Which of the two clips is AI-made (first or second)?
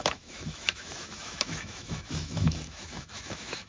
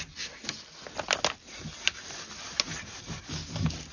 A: first